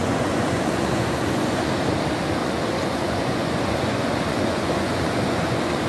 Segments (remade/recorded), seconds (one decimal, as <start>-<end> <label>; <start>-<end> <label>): 0.0-1.7 remade; 1.7-2.4 recorded; 2.4-5.9 remade